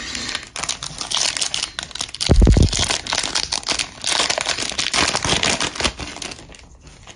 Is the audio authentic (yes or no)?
yes